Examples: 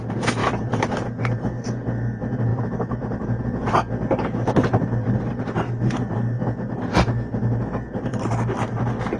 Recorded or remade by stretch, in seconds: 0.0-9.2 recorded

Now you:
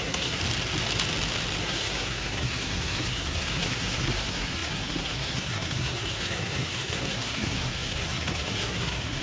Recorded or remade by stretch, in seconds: 0.0-0.4 remade; 0.4-1.6 recorded; 1.6-9.2 remade

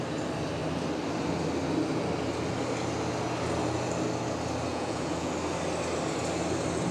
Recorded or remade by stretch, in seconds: 0.0-4.7 recorded; 4.7-5.3 remade; 5.3-6.9 recorded

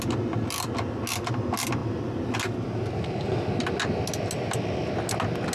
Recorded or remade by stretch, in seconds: 0.0-5.5 recorded

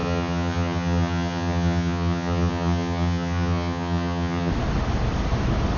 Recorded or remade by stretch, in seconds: 0.0-4.5 remade; 4.5-5.8 recorded